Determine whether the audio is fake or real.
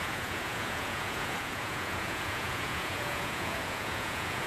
fake